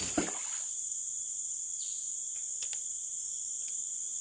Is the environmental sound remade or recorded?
remade